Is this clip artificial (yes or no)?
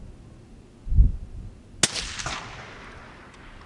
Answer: no